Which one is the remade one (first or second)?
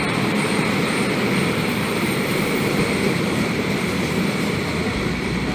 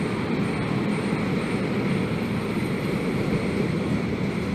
first